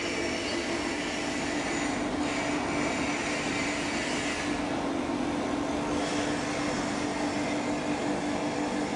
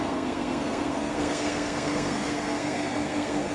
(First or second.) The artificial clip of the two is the second